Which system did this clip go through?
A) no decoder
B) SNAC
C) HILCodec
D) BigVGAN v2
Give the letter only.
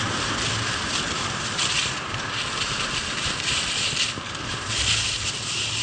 D